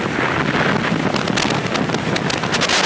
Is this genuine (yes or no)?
yes